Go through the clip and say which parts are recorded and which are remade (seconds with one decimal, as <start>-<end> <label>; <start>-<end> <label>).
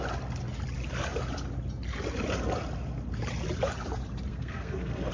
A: 0.0-4.3 recorded; 4.3-5.1 remade